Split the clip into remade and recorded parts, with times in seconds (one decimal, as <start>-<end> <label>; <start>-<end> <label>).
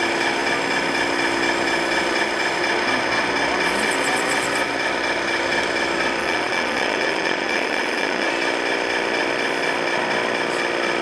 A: 0.0-6.2 recorded; 6.2-8.3 remade; 8.3-11.0 recorded